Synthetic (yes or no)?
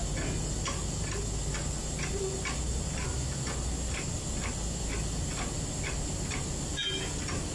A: no